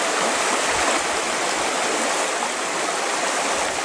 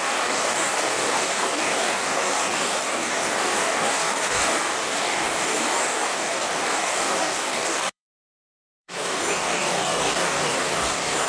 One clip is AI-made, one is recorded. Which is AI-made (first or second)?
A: second